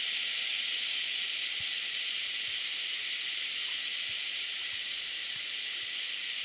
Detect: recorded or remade recorded